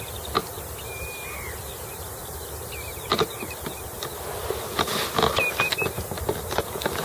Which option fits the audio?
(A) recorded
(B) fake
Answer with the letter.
A